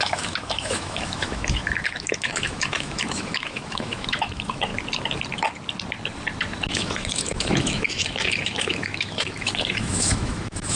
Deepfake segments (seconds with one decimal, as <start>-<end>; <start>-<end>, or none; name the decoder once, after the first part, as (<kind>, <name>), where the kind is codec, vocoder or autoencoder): 0.0-4.7 (autoencoder, DAC-VAE); 6.7-10.8